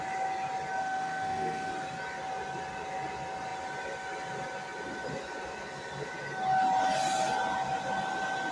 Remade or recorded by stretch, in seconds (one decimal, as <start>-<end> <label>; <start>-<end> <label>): 0.0-0.8 recorded; 0.8-1.7 remade; 1.7-8.5 recorded

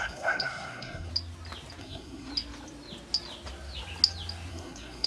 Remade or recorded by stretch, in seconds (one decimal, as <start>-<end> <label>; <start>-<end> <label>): 0.0-1.1 remade; 1.1-1.8 recorded; 1.8-2.3 remade; 2.3-4.5 recorded; 4.5-5.1 remade

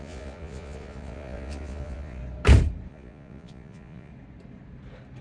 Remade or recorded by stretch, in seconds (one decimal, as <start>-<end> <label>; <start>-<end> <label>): 0.0-2.2 remade; 2.2-2.9 recorded; 2.9-4.1 remade; 4.1-5.2 recorded

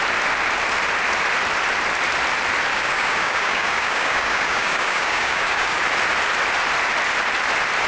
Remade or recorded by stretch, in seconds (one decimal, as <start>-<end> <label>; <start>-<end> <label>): 0.0-2.7 recorded; 2.7-5.8 remade; 5.8-7.9 recorded

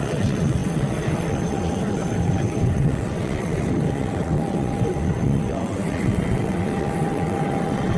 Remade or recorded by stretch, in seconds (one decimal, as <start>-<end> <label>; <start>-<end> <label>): 0.0-8.0 remade

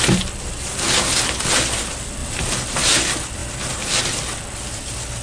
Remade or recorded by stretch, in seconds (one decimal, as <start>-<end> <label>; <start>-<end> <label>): 0.0-5.2 recorded

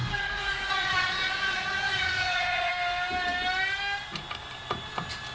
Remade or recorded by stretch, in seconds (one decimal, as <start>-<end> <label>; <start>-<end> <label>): 0.0-2.7 remade; 2.7-5.3 recorded